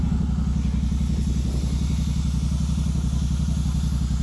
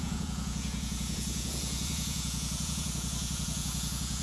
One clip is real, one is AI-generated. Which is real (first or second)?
first